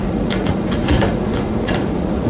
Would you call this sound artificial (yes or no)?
yes